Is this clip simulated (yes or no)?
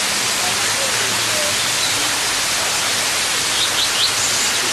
no